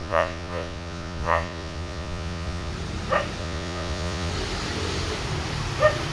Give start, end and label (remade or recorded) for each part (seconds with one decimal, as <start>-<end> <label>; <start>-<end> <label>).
0.0-2.7 remade; 2.7-3.4 recorded; 3.4-4.3 remade; 4.3-6.1 recorded

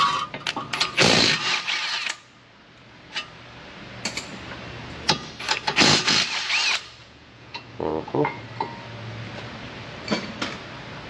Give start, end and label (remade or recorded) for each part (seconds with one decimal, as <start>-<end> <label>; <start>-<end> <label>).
0.0-7.0 recorded; 7.0-8.4 remade; 8.4-11.1 recorded

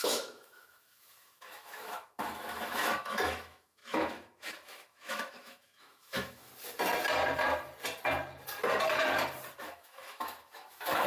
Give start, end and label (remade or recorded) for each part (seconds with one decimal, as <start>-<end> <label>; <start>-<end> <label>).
0.0-6.5 remade; 6.5-9.6 recorded; 9.6-11.1 remade

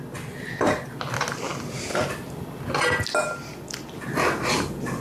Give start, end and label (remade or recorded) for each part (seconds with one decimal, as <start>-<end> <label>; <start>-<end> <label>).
0.0-5.0 recorded

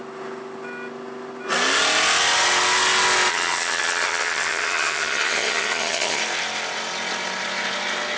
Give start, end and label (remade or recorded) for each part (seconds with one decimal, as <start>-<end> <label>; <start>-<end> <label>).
0.0-3.3 recorded; 3.3-6.2 remade; 6.2-8.2 recorded